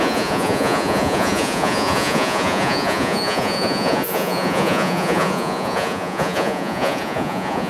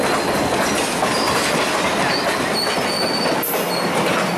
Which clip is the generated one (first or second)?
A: first